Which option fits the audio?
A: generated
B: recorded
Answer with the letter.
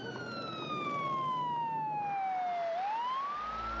B